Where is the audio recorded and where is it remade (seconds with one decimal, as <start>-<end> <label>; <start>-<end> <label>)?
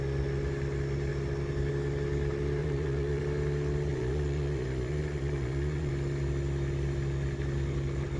0.0-2.6 recorded; 2.6-3.2 remade; 3.2-3.9 recorded; 3.9-5.9 remade; 5.9-8.2 recorded